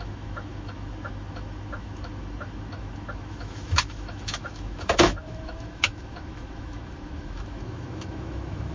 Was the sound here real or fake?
fake